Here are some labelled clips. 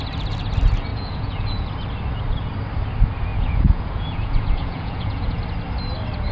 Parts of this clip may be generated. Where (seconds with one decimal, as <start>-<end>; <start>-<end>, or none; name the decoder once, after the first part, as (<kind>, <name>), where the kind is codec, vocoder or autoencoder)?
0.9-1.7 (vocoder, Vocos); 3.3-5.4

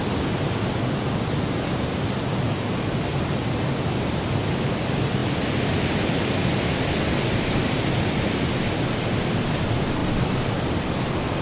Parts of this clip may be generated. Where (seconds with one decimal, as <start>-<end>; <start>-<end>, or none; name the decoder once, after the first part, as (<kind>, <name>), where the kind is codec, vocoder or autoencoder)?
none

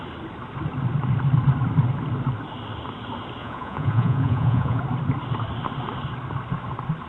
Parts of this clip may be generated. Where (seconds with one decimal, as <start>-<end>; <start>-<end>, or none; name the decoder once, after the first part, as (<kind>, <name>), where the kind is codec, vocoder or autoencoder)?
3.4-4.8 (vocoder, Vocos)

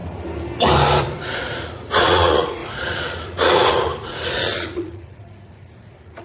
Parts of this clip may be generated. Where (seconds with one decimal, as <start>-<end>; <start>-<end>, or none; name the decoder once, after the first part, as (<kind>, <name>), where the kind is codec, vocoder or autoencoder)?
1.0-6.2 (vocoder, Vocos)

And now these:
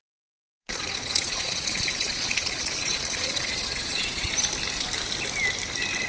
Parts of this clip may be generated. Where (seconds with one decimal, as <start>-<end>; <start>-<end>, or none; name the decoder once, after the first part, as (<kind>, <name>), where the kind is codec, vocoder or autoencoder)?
0.6-4.3 (vocoder, Vocos)

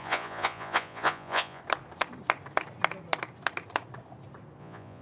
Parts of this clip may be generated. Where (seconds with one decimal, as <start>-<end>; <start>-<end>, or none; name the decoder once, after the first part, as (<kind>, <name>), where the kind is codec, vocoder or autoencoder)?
0.0-1.6 (vocoder, Vocos); 4.6-5.0